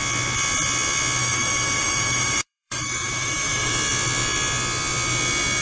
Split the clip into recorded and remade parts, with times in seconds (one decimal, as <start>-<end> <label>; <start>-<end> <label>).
0.0-1.2 recorded; 1.2-3.7 remade; 3.7-5.6 recorded